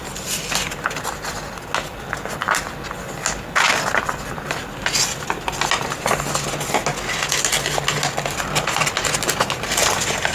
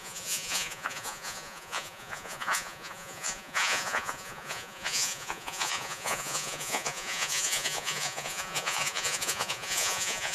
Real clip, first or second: first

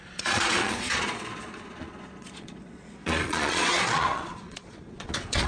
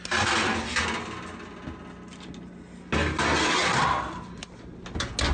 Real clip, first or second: second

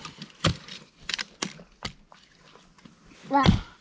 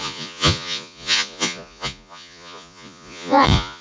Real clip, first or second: first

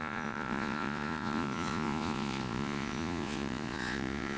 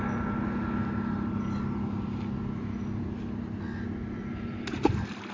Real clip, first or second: second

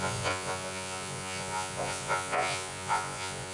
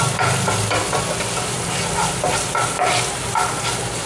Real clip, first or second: second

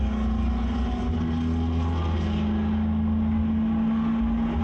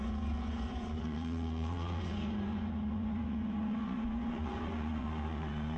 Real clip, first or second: first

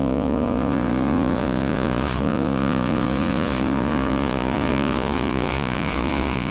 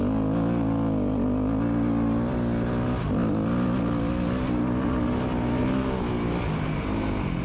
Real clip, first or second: second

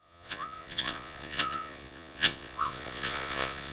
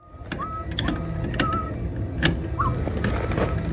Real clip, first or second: second